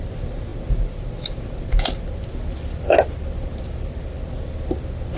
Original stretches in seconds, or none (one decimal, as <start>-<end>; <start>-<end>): 0.0-5.2